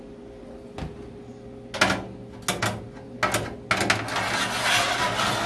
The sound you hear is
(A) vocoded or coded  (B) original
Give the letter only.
B